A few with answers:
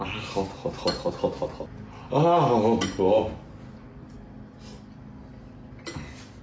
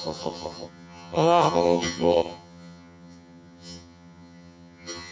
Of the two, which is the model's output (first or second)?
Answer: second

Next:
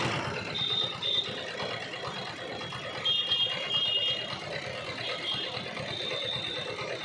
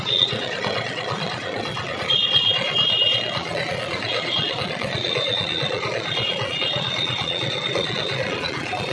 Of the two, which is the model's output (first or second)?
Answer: second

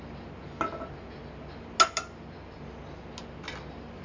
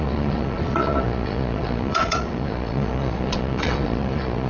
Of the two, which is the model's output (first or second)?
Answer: second